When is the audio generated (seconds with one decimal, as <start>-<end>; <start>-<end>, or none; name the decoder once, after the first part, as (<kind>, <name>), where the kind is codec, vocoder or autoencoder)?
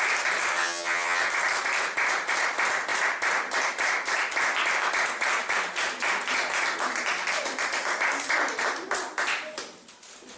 0.5-1.2 (vocoder, HiFi-GAN)